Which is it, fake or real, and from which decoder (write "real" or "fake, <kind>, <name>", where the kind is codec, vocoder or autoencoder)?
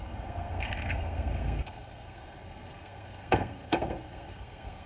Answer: fake, codec, SNAC